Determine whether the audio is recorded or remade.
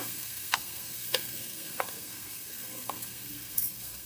remade